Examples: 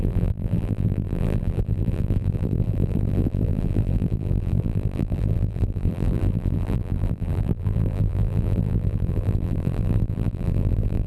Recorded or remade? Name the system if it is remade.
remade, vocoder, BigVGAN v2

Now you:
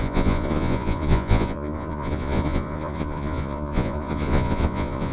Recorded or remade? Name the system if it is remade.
remade, vocoder, Vocos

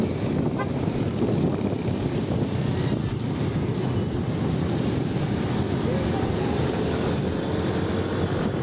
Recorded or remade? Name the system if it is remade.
recorded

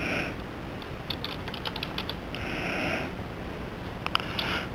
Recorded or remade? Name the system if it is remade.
recorded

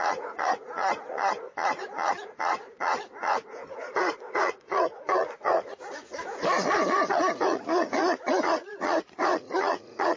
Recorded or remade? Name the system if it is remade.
remade, vocoder, Vocos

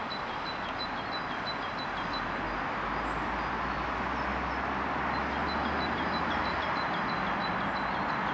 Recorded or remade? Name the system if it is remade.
recorded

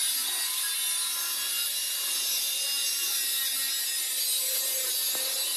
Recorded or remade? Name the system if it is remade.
recorded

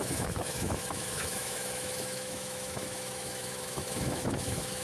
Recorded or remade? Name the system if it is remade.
remade, autoencoder, DAC-VAE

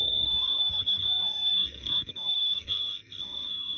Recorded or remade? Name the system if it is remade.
remade, codec, SNAC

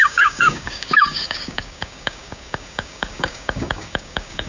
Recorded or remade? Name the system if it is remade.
remade, codec, DAC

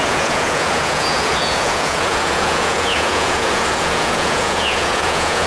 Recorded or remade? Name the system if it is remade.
remade, vocoder, Vocos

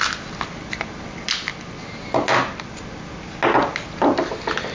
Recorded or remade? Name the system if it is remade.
recorded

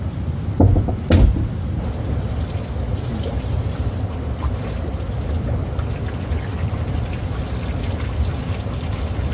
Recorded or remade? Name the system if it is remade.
recorded